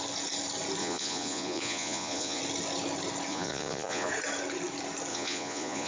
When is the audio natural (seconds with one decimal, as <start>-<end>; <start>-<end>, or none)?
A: 0.0-0.8; 2.4-3.3; 4.1-5.1